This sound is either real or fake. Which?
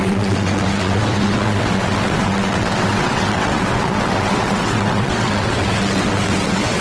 fake